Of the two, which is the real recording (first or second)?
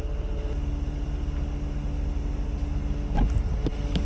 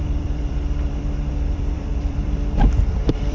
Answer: first